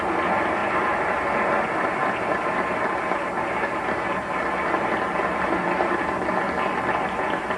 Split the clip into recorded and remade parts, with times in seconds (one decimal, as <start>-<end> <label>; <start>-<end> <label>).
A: 0.0-7.6 recorded